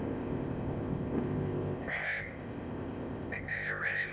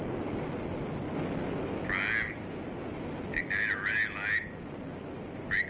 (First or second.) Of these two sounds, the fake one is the first